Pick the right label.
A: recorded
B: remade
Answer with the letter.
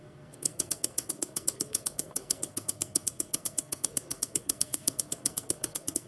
B